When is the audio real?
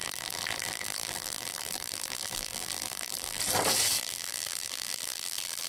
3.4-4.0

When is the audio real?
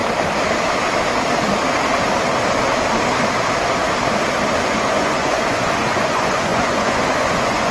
0.0-4.6